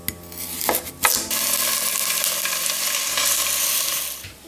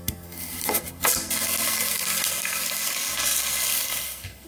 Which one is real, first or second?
first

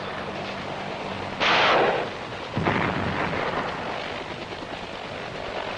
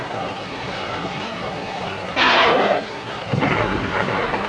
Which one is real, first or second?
first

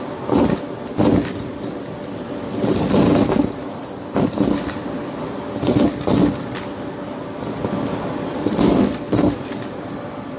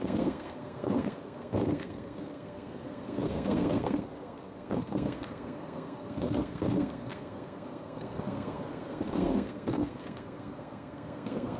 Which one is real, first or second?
first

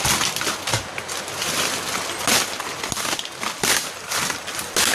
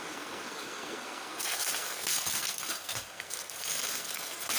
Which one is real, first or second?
first